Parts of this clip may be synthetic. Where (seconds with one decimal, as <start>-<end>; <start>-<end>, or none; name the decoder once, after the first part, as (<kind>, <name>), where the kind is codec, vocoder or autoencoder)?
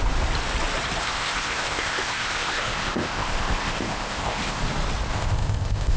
1.0-4.6 (codec, ZipCodec); 5.1-6.0